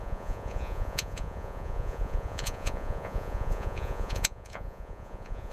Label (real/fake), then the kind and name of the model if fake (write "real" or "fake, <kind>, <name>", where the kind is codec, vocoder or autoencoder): fake, vocoder, Vocos